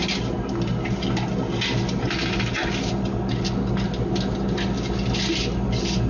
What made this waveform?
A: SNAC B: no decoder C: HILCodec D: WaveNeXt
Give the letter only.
B